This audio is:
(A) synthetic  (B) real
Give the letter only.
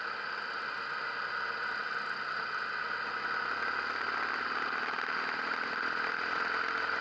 B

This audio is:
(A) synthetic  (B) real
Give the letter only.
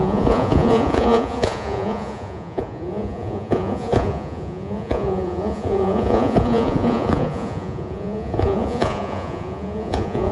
A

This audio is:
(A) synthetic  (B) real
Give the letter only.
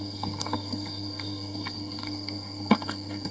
A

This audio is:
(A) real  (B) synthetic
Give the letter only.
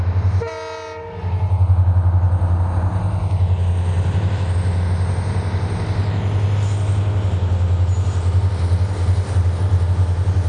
A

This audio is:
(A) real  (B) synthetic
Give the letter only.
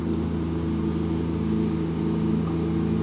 A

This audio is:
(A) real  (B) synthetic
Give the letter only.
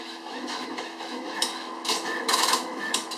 B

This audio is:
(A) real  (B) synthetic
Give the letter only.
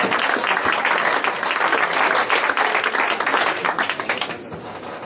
A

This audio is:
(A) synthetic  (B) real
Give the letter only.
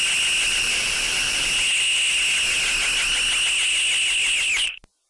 B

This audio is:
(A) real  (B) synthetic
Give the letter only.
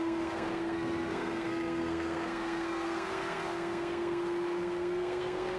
B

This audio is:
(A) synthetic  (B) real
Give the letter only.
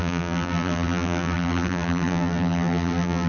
A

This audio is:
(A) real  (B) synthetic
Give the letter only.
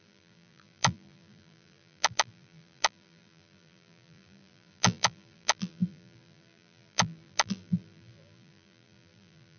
B